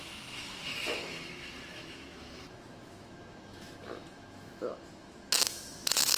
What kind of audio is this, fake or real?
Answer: fake